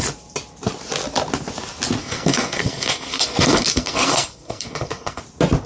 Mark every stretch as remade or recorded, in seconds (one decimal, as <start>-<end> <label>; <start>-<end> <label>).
0.0-2.0 recorded; 2.0-5.2 remade; 5.2-5.7 recorded